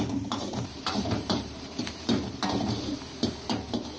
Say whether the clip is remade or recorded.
remade